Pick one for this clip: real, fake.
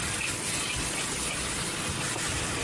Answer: real